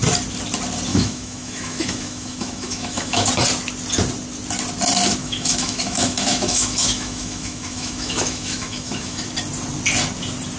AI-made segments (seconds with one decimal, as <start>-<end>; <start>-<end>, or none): 0.9-3.3; 5.2-9.3